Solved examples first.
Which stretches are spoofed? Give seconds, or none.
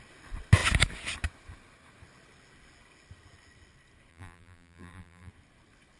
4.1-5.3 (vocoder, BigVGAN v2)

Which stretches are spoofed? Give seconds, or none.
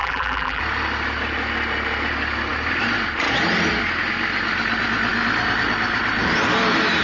0.0-0.6 (vocoder, BigVGAN v2)